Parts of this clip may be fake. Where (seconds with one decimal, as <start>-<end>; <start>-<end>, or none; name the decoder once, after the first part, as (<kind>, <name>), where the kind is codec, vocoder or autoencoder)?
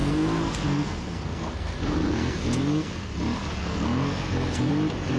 0.0-3.1 (codec, SNAC); 3.6-4.7